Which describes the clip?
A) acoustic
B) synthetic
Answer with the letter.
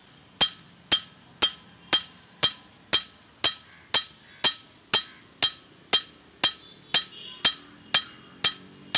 A